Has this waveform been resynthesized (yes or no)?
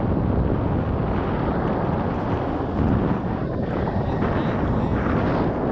no